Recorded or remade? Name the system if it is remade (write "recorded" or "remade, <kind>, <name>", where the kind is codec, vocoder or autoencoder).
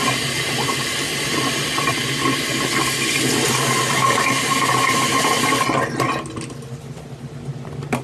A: recorded